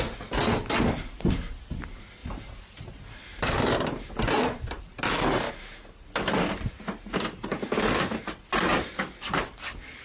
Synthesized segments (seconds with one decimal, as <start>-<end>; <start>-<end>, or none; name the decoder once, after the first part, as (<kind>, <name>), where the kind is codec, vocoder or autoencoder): 2.2-5.0 (vocoder, BigVGAN v2)